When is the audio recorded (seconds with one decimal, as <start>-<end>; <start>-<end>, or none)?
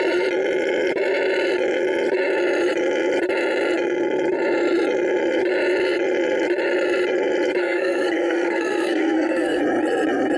0.0-7.6; 9.6-10.4